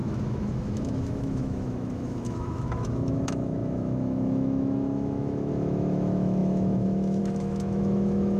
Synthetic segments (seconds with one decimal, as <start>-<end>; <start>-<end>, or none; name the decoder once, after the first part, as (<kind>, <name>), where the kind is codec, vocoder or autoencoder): 0.0-8.4 (autoencoder, DAC-VAE)